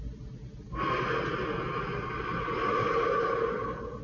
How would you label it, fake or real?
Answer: real